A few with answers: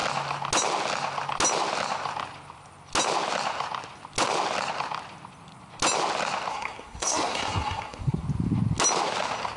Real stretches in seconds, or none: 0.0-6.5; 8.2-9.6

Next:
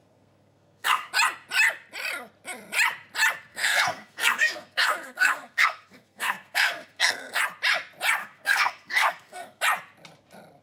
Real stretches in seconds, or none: 1.1-3.5; 7.4-8.2; 9.6-10.6

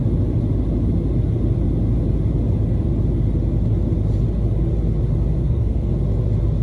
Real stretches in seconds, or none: 0.0-5.4; 5.9-6.6

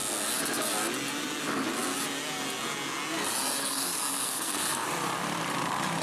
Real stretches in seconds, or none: 0.0-3.6; 4.9-6.0

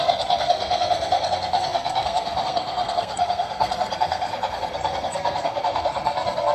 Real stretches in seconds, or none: none

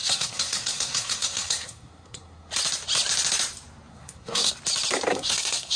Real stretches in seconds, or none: 2.5-3.9; 4.5-5.1

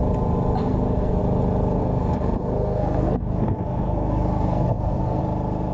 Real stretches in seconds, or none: 0.0-0.6; 1.2-1.8; 5.2-5.7

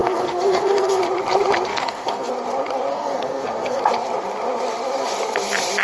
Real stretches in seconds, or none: 1.0-1.7; 2.3-2.9; 3.8-5.8